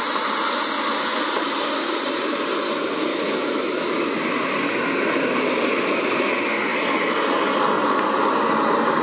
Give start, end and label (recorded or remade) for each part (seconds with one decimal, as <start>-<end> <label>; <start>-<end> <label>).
0.0-3.1 recorded; 3.1-3.9 remade; 3.9-9.0 recorded